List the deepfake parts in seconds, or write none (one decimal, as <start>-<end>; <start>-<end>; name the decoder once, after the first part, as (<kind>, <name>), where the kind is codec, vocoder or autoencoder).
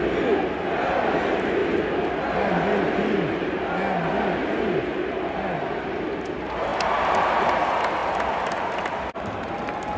none